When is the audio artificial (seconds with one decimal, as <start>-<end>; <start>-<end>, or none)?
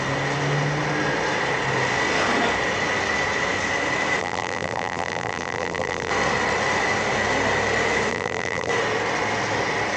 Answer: 4.2-6.1; 8.1-8.7